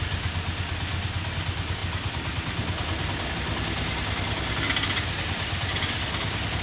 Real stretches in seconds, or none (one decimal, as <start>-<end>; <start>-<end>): 0.0-6.6